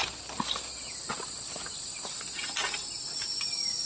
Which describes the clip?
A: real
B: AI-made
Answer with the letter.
A